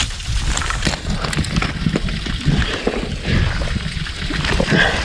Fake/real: real